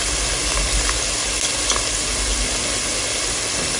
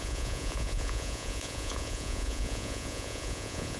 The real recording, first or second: first